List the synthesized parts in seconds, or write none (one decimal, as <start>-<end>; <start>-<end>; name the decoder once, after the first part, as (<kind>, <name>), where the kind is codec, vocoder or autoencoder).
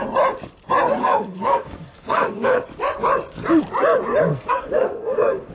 1.0-2.6 (codec, SNAC); 4.3-5.5